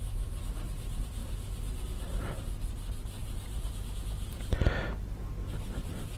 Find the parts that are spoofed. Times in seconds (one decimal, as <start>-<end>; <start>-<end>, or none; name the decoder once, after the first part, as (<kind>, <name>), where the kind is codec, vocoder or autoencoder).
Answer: 3.2-4.5 (vocoder, BigVGAN v2)